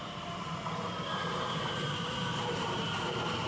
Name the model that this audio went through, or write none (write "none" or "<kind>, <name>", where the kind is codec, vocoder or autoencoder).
vocoder, BigVGAN v2